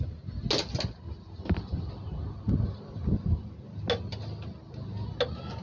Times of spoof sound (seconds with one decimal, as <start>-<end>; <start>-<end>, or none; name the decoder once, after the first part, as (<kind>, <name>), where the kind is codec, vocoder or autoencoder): none